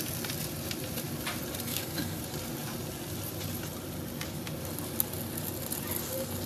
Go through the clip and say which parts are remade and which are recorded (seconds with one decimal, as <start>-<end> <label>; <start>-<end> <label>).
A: 0.0-1.7 recorded; 1.7-2.2 remade; 2.2-6.5 recorded